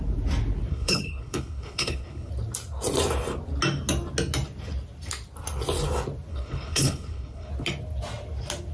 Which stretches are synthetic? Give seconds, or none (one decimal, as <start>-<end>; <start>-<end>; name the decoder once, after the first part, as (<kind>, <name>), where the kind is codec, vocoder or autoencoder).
0.7-2.3 (codec, HILCodec); 6.3-7.5